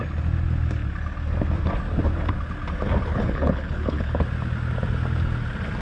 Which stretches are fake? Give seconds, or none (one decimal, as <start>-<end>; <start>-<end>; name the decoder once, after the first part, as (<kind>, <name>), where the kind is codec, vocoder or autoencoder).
3.1-4.2 (codec, HILCodec)